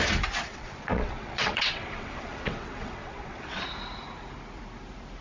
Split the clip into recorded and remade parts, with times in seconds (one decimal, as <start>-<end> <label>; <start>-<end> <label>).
0.0-0.5 recorded; 0.5-3.6 remade; 3.6-5.2 recorded